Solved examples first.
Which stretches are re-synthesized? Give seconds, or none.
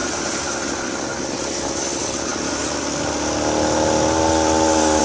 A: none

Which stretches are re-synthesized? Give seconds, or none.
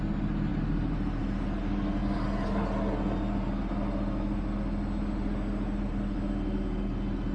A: none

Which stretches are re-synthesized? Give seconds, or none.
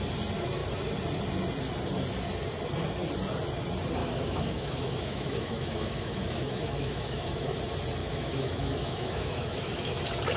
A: 4.0-7.6 (autoencoder, DAC-VAE); 8.0-10.0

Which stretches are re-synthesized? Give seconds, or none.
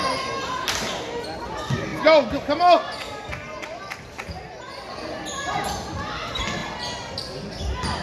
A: none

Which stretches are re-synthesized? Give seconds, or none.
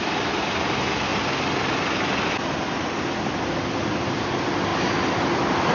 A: none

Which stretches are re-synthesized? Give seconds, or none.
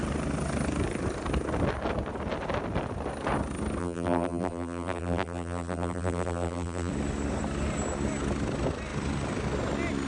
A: 3.8-6.9 (vocoder, BigVGAN v2)